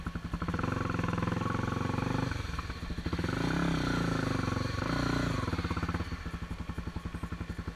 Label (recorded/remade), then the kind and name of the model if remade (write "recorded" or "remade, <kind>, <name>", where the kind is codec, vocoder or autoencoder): recorded